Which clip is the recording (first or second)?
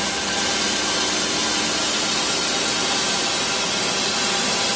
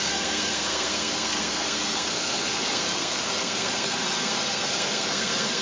first